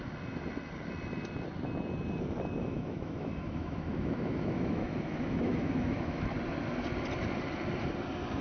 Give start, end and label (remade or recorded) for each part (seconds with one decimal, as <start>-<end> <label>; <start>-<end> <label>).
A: 0.0-2.6 recorded; 2.6-6.3 remade; 6.3-8.4 recorded